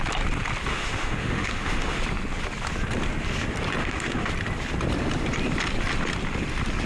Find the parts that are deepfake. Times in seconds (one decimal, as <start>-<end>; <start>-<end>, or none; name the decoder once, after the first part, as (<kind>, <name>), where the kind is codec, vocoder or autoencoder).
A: 0.7-2.0 (autoencoder, DAC-VAE); 3.8-4.3